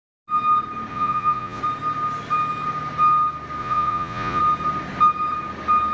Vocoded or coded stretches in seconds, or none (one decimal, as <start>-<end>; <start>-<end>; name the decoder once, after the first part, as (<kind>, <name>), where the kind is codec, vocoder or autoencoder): 0.9-1.6 (vocoder, Vocos); 3.6-4.4

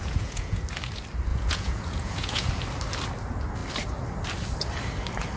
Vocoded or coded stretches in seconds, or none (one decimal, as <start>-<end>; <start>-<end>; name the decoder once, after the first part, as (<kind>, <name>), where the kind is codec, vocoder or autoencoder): 0.0-0.6 (vocoder, Vocos); 1.3-2.5

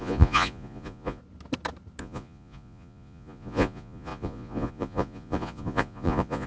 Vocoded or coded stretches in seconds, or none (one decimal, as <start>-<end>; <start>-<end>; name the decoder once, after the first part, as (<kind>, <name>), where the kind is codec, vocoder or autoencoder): 0.0-1.2 (vocoder, Vocos); 2.0-6.5

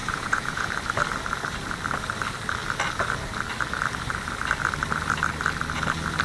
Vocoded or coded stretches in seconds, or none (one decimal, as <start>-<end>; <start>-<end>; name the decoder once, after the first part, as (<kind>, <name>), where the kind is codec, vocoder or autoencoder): 0.0-0.7 (vocoder, Vocos)

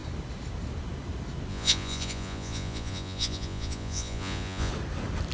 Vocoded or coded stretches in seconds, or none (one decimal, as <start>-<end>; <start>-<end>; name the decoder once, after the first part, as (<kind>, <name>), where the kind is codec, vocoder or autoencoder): 1.5-4.7 (vocoder, Vocos)

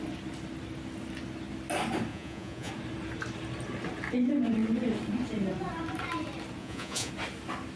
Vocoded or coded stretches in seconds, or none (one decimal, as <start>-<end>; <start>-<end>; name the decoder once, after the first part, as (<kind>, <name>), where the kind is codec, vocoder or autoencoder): 2.1-2.7 (vocoder, Vocos); 6.6-7.1

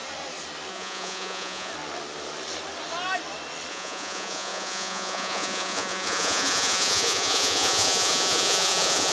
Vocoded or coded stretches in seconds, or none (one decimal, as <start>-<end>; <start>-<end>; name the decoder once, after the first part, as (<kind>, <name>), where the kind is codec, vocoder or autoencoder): 0.7-1.7 (vocoder, Vocos); 3.7-9.1

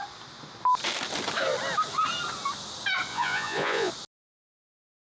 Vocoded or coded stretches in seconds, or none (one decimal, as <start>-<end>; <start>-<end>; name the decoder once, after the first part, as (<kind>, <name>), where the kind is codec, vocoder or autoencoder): 3.1-3.9 (vocoder, Vocos)